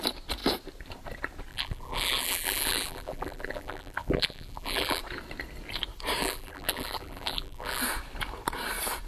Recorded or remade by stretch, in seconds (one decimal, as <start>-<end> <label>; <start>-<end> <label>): 0.0-1.5 recorded; 1.5-5.0 remade; 5.0-6.2 recorded; 6.2-7.8 remade; 7.8-9.1 recorded